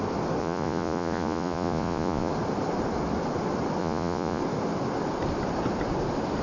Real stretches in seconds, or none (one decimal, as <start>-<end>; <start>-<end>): 0.0-0.4; 2.3-3.8; 4.4-6.4